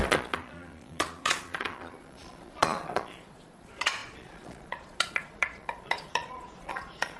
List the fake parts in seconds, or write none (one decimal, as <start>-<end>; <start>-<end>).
0.0-7.2